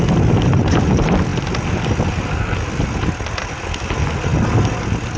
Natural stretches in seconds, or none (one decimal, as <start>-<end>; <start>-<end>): 0.0-5.2